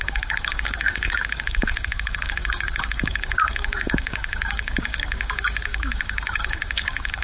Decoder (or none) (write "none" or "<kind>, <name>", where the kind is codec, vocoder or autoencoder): codec, DAC